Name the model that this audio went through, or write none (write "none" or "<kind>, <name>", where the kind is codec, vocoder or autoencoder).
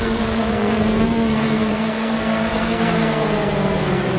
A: codec, SNAC